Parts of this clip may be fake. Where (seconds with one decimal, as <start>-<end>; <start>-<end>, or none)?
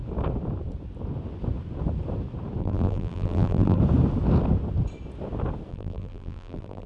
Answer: 2.6-3.8; 5.7-6.9